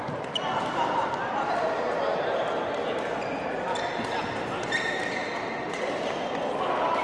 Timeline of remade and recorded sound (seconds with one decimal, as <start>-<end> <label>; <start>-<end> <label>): 0.0-7.0 recorded